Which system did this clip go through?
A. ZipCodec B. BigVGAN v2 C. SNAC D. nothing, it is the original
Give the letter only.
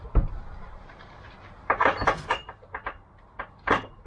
B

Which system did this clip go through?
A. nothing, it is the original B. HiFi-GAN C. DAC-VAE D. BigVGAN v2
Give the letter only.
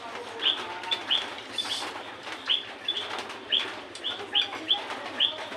A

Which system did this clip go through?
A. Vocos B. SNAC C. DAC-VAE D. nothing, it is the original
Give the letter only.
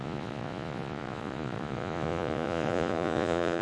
A